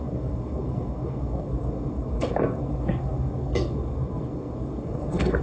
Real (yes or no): no